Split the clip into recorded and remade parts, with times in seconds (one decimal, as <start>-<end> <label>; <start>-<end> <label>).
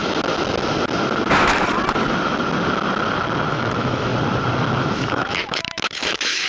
0.0-3.5 recorded; 3.5-4.1 remade; 4.1-4.8 recorded; 4.8-6.5 remade